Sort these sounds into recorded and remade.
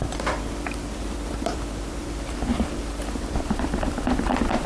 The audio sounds remade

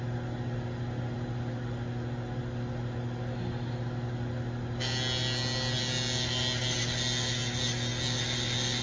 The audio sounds recorded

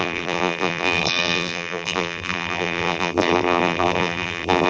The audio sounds remade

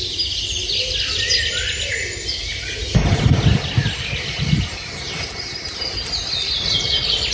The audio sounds recorded